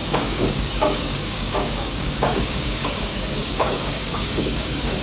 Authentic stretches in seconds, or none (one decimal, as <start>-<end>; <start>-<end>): none